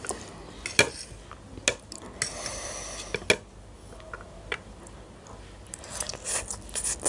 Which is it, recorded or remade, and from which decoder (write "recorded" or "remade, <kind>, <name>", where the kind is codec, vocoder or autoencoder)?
recorded